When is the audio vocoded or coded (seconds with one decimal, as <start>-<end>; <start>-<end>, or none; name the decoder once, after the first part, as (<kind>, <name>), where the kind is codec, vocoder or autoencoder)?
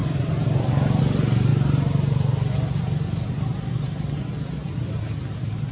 none